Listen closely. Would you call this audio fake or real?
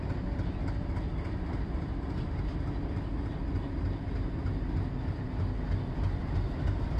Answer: real